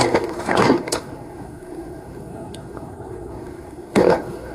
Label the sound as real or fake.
fake